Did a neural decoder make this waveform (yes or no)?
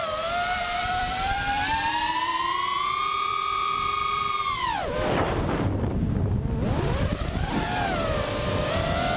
yes